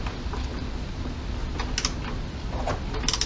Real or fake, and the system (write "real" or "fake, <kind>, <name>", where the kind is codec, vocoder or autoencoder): real